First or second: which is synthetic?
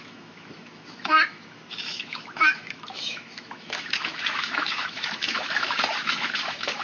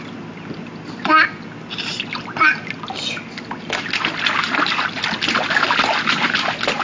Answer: first